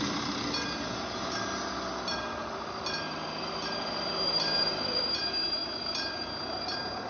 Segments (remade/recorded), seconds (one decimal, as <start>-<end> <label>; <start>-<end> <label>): 0.0-7.1 recorded